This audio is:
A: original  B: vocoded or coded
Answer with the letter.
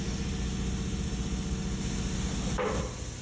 A